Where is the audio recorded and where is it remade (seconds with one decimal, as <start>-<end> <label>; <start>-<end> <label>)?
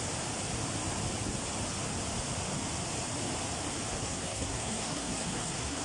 0.0-4.0 recorded; 4.0-5.8 remade